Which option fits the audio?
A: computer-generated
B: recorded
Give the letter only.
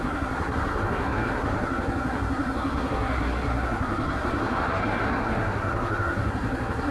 A